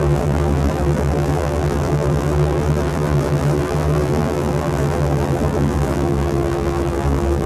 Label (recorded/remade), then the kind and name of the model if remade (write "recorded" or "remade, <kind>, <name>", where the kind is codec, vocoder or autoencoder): remade, vocoder, BigVGAN v2